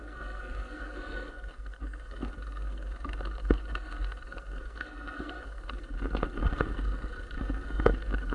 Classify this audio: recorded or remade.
remade